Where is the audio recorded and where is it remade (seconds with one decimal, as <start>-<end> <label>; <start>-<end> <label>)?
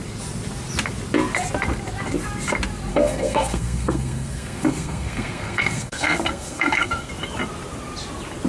0.0-2.9 recorded; 2.9-7.1 remade; 7.1-8.5 recorded